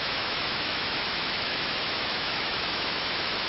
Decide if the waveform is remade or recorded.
remade